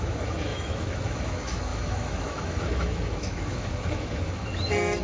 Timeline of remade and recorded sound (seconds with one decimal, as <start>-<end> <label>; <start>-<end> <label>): 0.0-5.0 remade